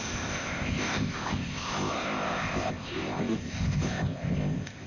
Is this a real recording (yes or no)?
no